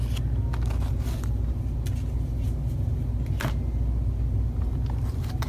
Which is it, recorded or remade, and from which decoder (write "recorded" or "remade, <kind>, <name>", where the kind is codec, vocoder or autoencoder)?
recorded